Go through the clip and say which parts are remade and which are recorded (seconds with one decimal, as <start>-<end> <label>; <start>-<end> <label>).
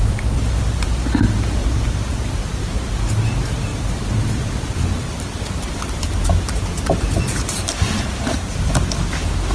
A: 0.0-1.6 recorded; 1.6-2.6 remade; 2.6-3.7 recorded; 3.7-8.9 remade; 8.9-9.5 recorded